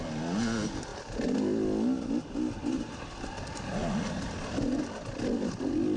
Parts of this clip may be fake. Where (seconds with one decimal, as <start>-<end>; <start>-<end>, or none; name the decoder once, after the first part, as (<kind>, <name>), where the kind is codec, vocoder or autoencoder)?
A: none

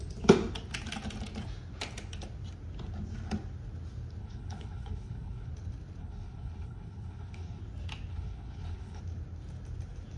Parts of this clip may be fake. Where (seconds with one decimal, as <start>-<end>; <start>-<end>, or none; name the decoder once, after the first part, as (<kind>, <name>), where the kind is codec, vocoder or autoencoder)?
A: 4.2-5.5 (codec, HILCodec); 6.0-7.6; 8.1-9.0